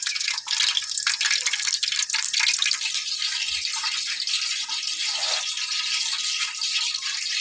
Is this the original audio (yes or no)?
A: yes